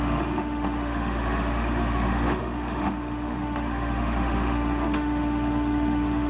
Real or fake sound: fake